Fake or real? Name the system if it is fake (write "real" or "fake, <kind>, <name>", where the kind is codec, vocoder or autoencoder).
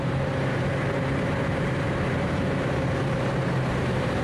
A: fake, vocoder, BigVGAN v2